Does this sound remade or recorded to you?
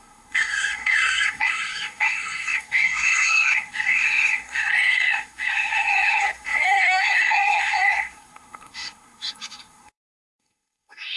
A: remade